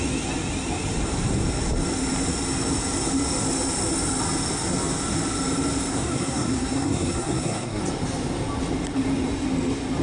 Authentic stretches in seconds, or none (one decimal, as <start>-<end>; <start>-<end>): 0.0-5.9; 7.8-10.0